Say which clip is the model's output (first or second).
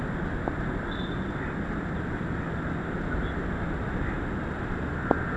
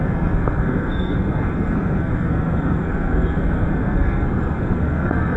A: second